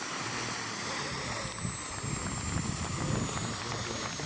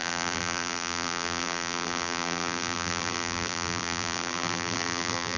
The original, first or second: first